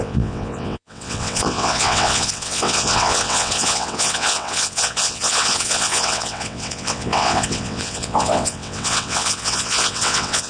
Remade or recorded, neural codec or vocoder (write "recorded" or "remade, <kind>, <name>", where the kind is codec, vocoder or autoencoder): remade, vocoder, WaveNeXt